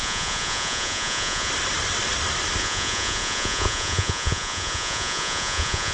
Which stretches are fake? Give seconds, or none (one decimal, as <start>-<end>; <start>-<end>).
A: 0.0-1.5; 2.6-5.9